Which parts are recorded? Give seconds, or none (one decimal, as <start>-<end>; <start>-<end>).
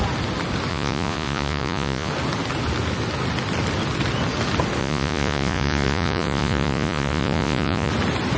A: 0.0-0.7; 2.1-4.8; 7.9-8.4